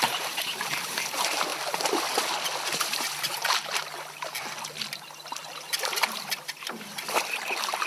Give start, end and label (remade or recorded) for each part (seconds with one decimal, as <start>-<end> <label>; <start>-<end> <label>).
0.0-1.5 remade; 1.5-2.8 recorded; 2.8-3.8 remade; 3.8-6.2 recorded; 6.2-7.9 remade